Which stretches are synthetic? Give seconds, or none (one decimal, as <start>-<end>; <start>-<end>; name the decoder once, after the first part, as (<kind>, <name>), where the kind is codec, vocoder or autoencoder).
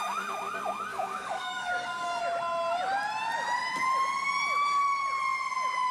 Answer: 0.9-2.2 (codec, DAC)